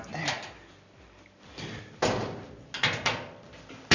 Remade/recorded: recorded